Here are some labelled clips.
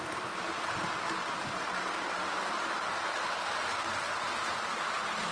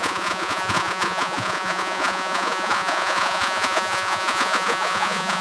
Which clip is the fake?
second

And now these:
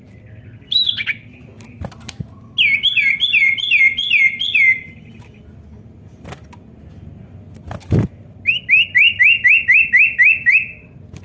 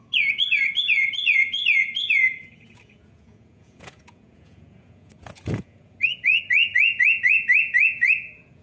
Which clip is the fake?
second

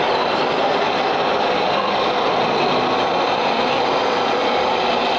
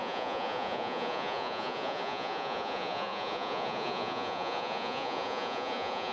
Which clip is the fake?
second